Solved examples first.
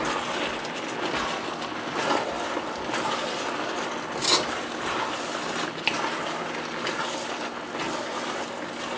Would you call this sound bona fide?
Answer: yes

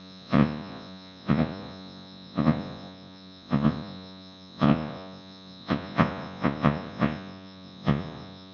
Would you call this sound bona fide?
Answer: no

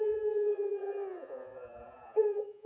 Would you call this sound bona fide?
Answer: no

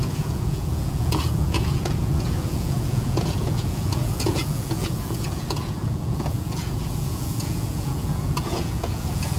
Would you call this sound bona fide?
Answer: no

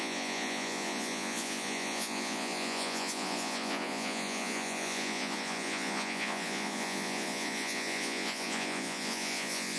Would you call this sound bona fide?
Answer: no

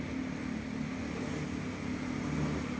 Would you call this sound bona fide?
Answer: yes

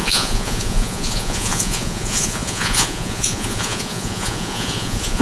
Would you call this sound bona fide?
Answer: no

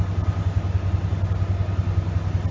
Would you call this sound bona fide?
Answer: yes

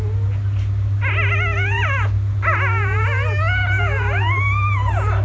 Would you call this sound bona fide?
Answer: yes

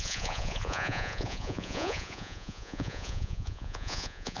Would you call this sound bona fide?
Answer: no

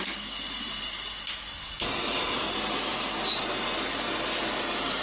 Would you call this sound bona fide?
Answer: yes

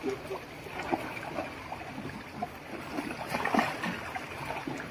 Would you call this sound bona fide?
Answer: yes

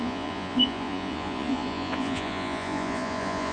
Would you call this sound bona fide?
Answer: no